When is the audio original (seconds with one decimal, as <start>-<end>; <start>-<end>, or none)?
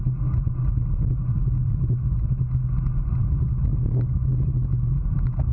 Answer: 0.0-3.7; 4.9-5.5